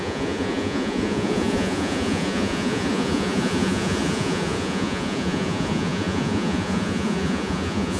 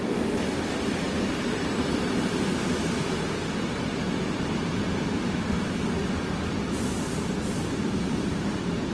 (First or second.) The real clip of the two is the second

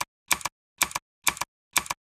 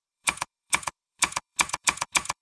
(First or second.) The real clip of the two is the first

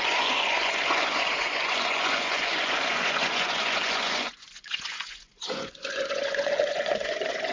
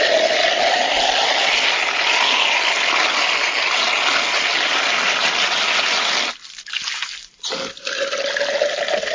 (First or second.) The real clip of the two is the second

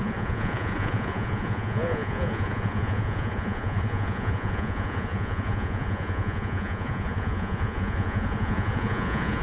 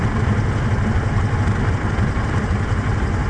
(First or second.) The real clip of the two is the second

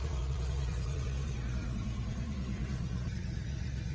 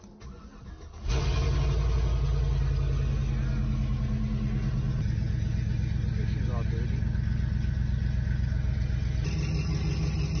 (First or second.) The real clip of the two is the second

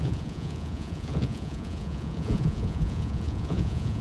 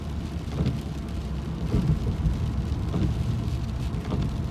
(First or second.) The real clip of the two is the second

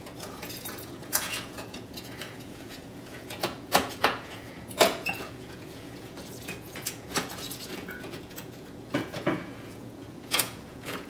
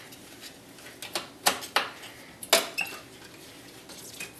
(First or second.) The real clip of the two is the second